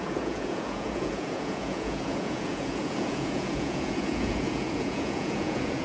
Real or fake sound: fake